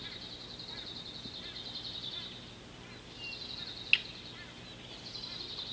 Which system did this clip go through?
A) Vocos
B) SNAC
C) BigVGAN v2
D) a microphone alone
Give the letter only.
D